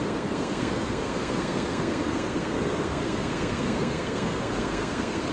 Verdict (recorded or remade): remade